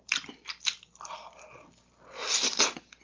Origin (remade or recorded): recorded